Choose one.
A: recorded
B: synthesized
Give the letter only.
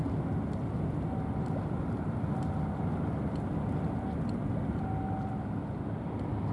A